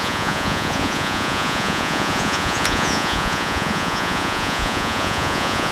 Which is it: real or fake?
fake